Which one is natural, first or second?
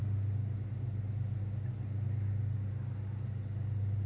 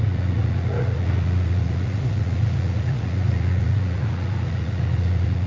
first